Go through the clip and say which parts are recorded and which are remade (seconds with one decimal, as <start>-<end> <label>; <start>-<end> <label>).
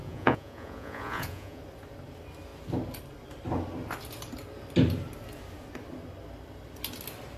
0.0-1.6 remade; 1.6-7.4 recorded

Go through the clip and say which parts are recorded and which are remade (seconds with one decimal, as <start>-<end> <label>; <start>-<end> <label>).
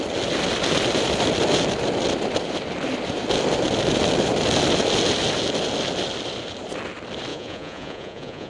0.0-7.3 recorded; 7.3-8.5 remade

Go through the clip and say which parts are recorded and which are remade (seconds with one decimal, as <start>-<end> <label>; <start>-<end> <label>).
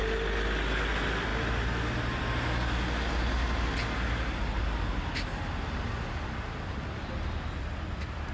0.0-8.3 recorded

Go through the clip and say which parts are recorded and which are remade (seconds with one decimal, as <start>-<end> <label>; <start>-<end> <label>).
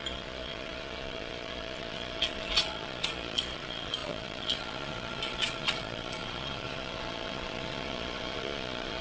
0.0-9.0 remade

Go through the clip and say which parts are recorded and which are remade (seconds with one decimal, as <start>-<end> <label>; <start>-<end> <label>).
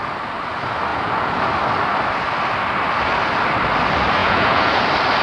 0.0-0.9 recorded; 0.9-1.4 remade; 1.4-4.2 recorded; 4.2-4.8 remade; 4.8-5.2 recorded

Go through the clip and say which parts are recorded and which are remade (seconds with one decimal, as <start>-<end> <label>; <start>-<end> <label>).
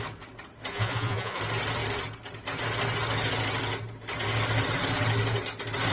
0.0-0.7 recorded; 0.7-1.4 remade; 1.4-5.9 recorded